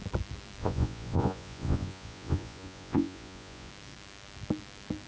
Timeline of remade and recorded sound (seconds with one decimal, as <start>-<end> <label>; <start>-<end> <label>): 0.0-0.6 recorded; 0.6-3.7 remade; 3.7-5.1 recorded